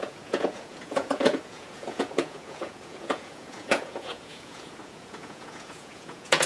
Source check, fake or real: fake